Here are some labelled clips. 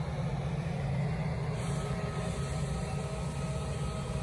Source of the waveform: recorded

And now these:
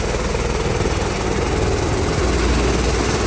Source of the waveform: recorded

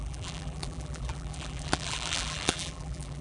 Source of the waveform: remade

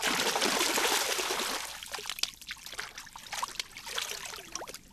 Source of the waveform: recorded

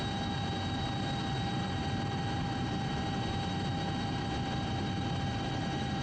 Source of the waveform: remade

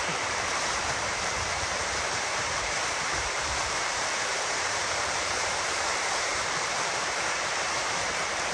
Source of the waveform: remade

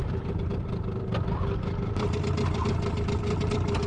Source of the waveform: recorded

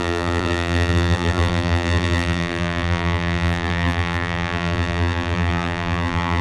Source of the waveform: remade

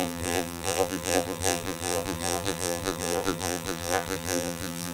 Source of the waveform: remade